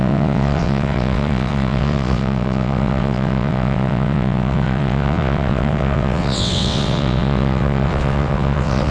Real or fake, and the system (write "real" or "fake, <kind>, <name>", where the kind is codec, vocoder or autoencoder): fake, vocoder, WaveNeXt